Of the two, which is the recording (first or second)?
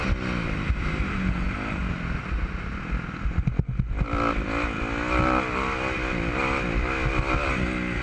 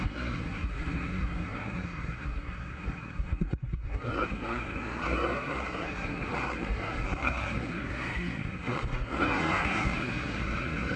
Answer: first